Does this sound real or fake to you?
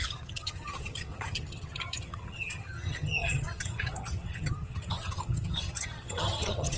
fake